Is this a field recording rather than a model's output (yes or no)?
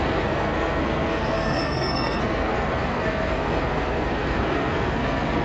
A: no